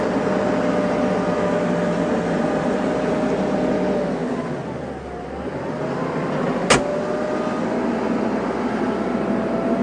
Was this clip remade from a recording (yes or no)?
no